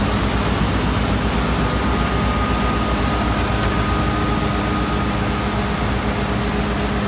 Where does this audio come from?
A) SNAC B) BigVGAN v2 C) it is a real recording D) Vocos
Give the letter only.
C